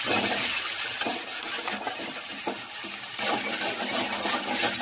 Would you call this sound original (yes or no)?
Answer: yes